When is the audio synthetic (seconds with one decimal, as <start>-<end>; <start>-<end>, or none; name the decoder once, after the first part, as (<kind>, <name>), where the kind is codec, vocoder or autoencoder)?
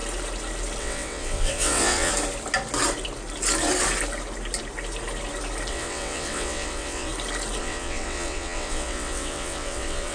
0.8-2.1 (vocoder, WaveNeXt); 5.7-7.1; 7.6-10.1